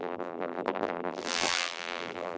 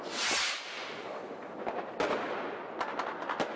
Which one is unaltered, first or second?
second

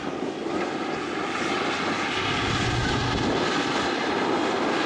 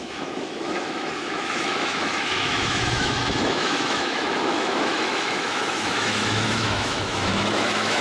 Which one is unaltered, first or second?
first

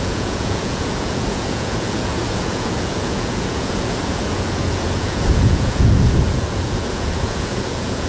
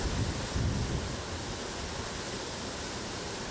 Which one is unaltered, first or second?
second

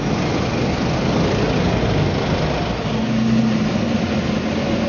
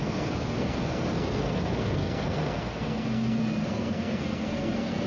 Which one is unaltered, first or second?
first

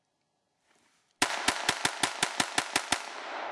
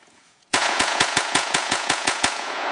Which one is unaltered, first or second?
first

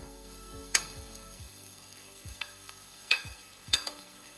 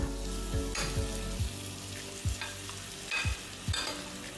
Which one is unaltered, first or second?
second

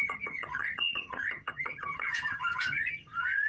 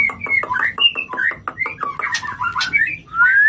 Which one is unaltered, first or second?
second